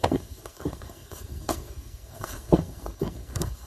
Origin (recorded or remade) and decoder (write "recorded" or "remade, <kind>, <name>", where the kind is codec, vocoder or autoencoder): remade, codec, SNAC